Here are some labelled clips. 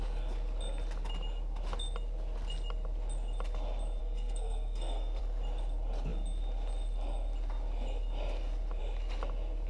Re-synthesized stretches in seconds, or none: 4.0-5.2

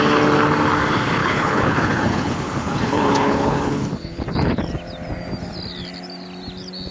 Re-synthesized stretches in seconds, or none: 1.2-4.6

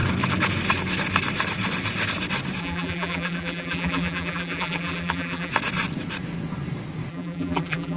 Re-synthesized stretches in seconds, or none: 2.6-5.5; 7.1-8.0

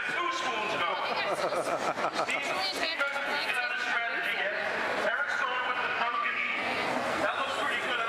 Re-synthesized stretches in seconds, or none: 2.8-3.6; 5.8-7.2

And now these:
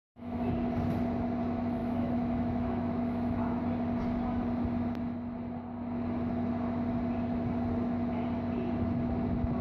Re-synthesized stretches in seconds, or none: 0.0-0.5; 1.8-3.6